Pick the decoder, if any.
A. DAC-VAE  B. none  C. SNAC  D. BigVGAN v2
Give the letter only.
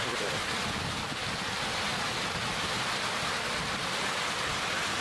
B